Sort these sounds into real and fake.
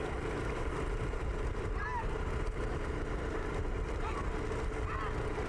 real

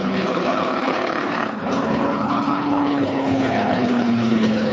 fake